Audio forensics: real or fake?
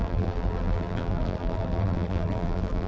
fake